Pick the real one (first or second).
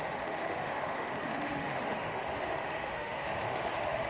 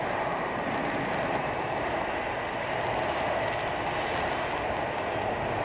second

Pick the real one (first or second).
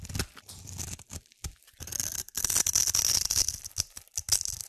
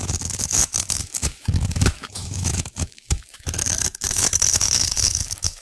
first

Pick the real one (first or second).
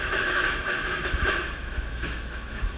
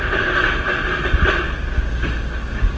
second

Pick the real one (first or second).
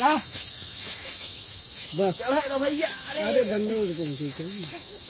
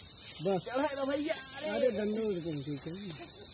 second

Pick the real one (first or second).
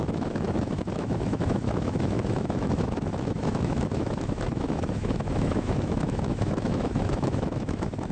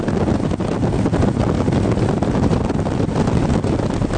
second